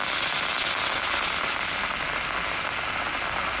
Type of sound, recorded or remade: recorded